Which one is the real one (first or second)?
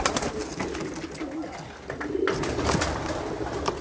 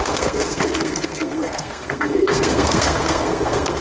first